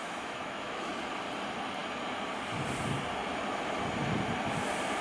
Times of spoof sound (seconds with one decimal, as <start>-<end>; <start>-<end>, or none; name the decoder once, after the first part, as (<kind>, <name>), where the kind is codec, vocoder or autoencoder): 0.0-0.9 (autoencoder, DAC-VAE)